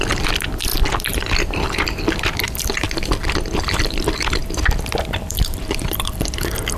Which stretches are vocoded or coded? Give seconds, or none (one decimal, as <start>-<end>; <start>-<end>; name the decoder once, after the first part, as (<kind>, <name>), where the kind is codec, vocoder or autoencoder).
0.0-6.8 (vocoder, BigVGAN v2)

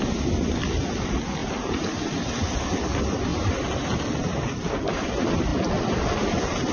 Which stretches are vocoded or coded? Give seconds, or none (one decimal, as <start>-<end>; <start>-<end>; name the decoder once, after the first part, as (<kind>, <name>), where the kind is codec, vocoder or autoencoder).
1.4-2.3 (vocoder, BigVGAN v2); 3.3-4.5

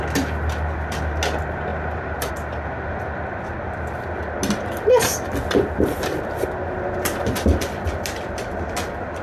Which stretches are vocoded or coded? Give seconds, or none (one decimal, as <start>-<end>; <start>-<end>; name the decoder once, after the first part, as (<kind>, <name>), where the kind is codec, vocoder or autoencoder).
1.7-2.3 (vocoder, BigVGAN v2)